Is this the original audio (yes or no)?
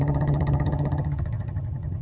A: no